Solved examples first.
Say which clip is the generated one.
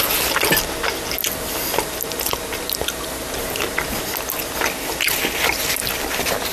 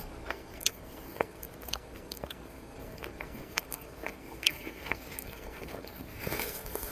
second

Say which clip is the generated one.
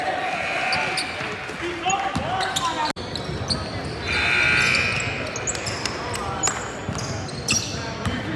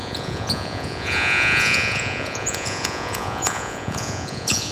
second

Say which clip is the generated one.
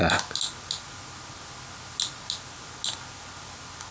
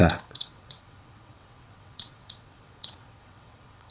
second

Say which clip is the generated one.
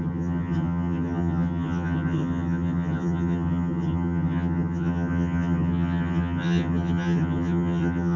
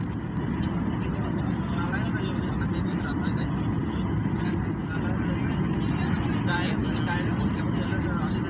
first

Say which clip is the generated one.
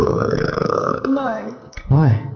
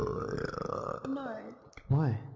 first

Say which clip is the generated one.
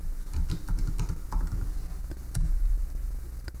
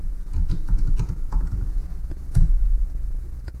second